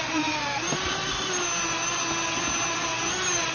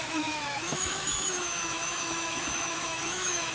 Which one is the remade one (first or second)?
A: second